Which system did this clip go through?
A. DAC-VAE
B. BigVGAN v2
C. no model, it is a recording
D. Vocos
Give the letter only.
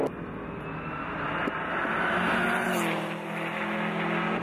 C